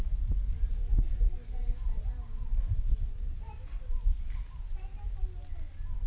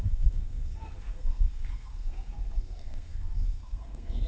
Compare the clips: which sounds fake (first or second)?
second